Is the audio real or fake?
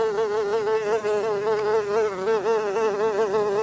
real